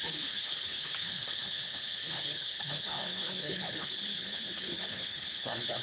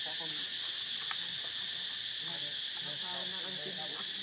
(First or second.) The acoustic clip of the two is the second